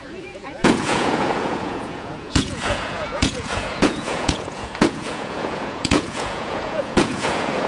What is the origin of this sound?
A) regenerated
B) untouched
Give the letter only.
A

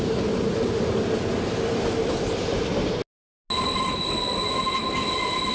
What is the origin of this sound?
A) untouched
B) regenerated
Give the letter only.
A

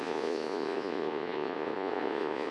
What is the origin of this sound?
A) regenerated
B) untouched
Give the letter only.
A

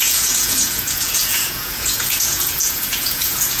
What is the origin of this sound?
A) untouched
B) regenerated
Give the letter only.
B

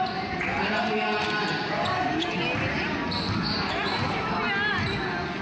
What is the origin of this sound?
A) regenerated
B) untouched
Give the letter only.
B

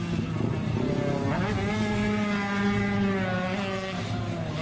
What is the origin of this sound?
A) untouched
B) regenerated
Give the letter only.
A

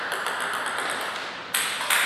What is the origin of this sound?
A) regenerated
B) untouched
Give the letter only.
B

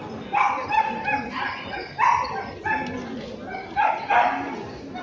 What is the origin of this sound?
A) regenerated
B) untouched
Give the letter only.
B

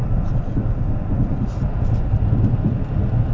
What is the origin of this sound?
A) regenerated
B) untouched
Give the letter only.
B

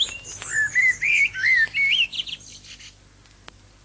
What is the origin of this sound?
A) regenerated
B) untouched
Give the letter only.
B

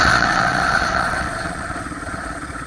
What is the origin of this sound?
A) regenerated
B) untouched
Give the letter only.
A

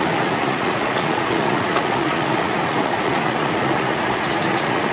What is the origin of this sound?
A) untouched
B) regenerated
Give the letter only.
B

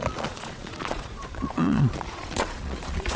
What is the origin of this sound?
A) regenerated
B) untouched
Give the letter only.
A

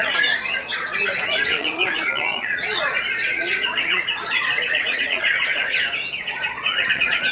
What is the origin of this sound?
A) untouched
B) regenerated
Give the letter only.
B